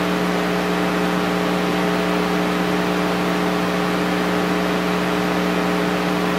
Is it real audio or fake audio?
real